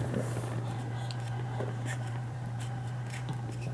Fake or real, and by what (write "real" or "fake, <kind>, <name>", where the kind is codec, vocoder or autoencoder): fake, vocoder, BigVGAN v2